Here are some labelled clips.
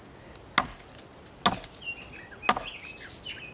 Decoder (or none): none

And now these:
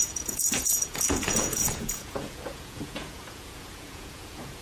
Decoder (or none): vocoder, Vocos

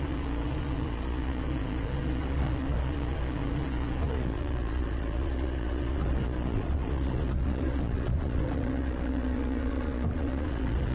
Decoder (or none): vocoder, Vocos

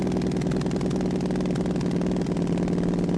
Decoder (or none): none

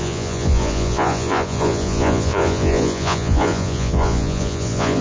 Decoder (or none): vocoder, Vocos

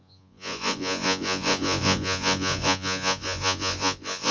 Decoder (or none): vocoder, Vocos